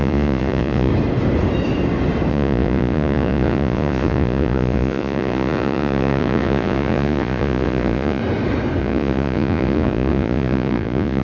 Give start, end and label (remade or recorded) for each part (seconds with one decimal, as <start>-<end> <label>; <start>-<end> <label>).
0.0-0.9 remade; 0.9-2.3 recorded; 2.3-8.2 remade; 8.2-8.8 recorded; 8.8-11.2 remade